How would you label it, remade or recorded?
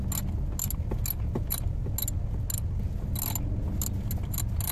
recorded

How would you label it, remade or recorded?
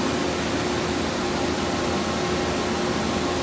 recorded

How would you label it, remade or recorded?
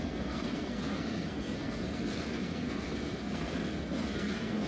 remade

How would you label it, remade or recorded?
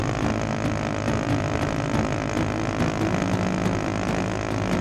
recorded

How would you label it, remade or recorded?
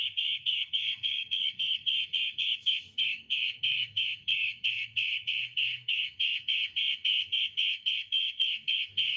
remade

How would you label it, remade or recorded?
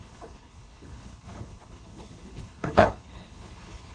remade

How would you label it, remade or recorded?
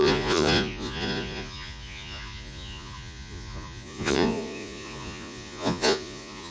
remade